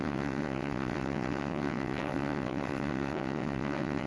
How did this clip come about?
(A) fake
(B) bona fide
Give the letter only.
A